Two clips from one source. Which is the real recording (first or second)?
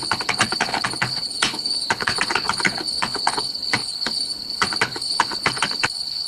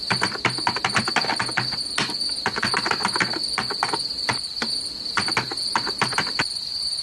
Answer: second